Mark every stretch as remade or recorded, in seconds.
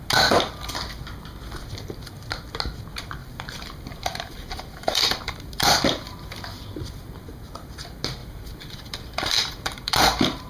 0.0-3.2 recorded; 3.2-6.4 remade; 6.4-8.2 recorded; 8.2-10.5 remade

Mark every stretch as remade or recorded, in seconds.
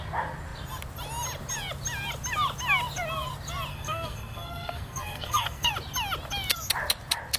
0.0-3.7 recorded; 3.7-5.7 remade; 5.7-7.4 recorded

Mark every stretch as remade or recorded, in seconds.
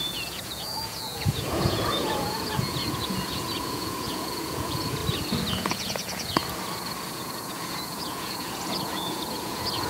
0.0-5.0 remade; 5.0-5.5 recorded; 5.5-6.4 remade; 6.4-7.1 recorded; 7.1-9.9 remade